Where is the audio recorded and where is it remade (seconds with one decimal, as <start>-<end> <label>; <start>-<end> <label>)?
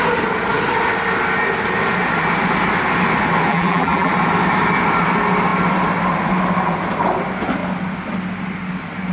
0.0-3.5 recorded; 3.5-4.1 remade; 4.1-9.1 recorded